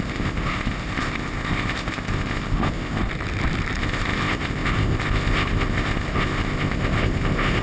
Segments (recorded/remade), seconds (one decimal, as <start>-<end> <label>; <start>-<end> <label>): 0.0-3.1 remade; 3.1-3.8 recorded; 3.8-7.6 remade